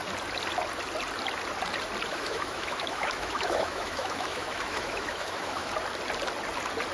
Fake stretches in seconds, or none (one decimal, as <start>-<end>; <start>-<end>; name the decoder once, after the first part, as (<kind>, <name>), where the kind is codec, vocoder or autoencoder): 2.1-5.7 (autoencoder, DAC-VAE)